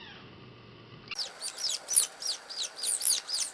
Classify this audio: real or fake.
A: real